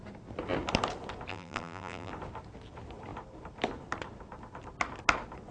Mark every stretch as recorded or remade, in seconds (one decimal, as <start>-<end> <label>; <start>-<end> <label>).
0.0-1.3 recorded; 1.3-2.1 remade; 2.1-5.5 recorded

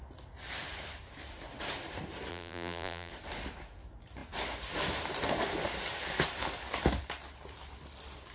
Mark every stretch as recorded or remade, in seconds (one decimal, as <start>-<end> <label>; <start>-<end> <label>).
0.0-2.3 recorded; 2.3-3.1 remade; 3.1-8.3 recorded